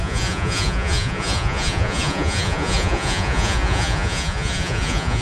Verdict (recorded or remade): remade